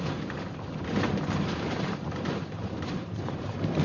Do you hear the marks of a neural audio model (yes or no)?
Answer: yes